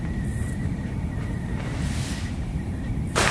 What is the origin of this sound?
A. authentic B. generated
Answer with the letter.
A